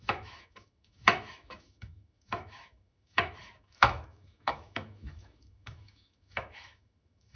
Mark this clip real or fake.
fake